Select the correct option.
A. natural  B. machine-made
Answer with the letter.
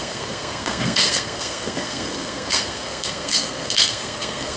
B